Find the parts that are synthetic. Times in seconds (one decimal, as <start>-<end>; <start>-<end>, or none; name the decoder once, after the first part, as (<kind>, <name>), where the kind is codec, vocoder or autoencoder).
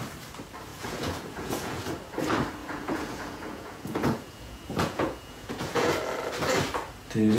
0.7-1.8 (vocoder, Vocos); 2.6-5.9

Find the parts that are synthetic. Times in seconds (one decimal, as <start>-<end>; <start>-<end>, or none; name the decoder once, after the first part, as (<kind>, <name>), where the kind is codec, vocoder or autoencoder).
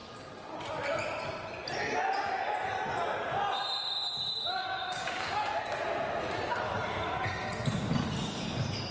4.5-5.6 (codec, DAC)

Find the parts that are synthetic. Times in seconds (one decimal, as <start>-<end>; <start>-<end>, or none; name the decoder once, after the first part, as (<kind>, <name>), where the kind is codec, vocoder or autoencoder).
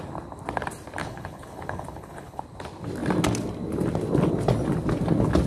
1.0-2.4 (codec, HILCodec)